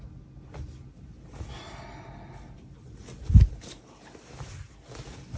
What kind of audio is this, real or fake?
real